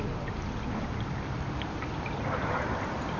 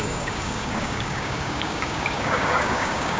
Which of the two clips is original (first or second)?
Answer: first